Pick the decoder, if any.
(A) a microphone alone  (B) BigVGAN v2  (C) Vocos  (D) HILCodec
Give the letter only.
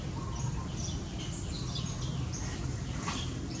A